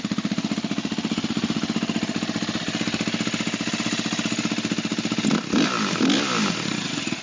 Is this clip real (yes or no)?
yes